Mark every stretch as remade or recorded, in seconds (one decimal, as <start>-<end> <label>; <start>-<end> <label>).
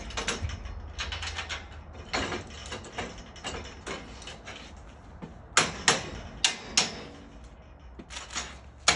0.0-9.0 recorded